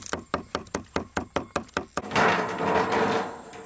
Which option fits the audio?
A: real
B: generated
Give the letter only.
A